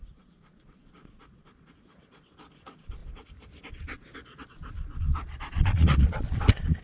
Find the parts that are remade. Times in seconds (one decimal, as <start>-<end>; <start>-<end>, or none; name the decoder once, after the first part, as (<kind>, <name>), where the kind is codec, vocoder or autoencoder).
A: 0.0-3.0 (vocoder, Vocos); 3.7-6.8